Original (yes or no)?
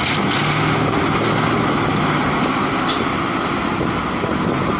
yes